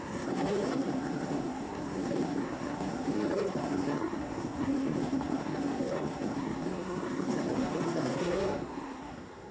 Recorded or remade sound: remade